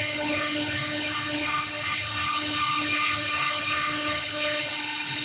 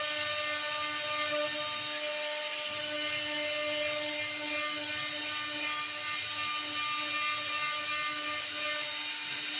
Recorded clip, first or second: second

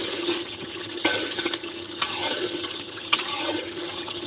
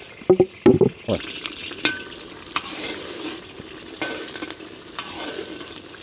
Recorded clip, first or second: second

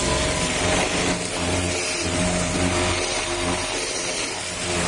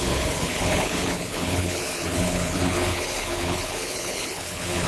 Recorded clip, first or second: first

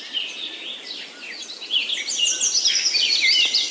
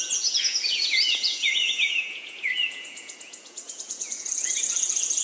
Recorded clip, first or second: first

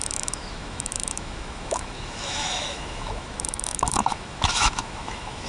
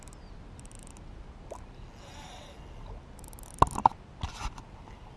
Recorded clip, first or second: second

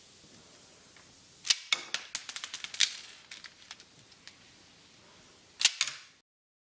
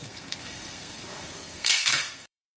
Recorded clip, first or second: first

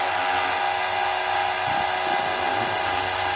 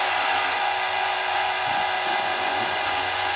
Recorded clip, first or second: first